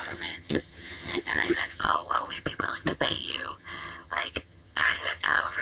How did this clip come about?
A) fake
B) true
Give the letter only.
A